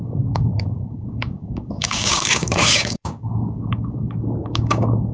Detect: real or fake fake